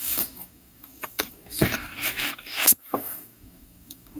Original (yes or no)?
no